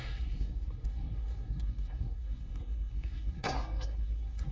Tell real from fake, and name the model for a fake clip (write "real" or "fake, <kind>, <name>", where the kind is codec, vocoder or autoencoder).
fake, codec, SNAC